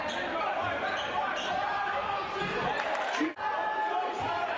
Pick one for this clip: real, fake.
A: fake